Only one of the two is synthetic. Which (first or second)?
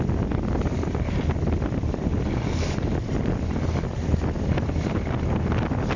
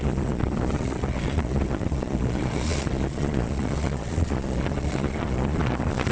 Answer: second